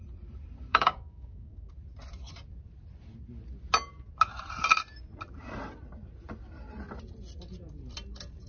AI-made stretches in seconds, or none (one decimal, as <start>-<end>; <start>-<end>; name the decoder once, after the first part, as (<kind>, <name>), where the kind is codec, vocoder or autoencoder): 0.7-1.7 (codec, DAC)